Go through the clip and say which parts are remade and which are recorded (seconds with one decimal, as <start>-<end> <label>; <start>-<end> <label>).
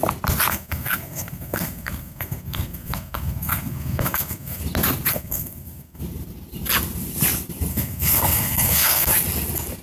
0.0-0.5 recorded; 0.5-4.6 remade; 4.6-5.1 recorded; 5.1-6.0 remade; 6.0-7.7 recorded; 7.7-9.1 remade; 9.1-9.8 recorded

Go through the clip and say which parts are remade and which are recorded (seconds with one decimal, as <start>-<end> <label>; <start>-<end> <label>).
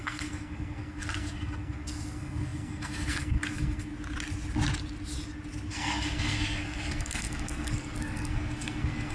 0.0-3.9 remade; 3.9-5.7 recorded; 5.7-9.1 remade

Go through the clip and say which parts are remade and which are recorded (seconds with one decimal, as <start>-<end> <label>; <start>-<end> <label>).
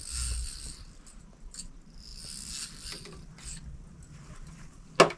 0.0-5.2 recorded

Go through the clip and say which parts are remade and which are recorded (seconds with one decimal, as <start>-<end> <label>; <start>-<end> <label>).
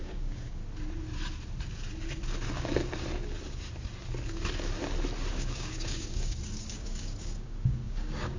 0.0-0.6 remade; 0.6-5.3 recorded; 5.3-8.4 remade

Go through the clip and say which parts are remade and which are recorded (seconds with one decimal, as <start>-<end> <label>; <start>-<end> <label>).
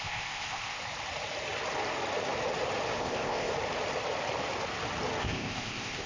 0.0-0.8 remade; 0.8-3.0 recorded; 3.0-3.5 remade; 3.5-5.2 recorded; 5.2-6.1 remade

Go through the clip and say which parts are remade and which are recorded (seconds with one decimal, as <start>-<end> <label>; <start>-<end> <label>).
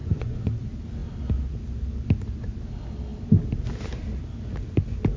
0.0-0.5 remade; 0.5-5.2 recorded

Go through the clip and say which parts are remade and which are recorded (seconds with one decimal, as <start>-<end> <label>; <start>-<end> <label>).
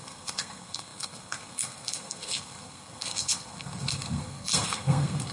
0.0-5.3 remade